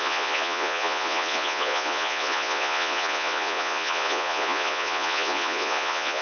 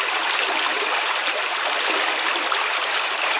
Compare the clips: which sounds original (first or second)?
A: second